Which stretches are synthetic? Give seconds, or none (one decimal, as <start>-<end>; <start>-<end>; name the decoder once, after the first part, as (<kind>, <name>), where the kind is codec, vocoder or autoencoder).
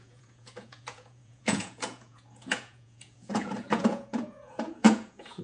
0.0-5.4 (vocoder, Vocos)